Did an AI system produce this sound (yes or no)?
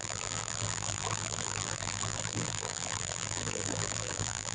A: yes